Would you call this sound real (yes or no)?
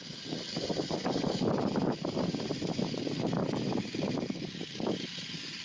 yes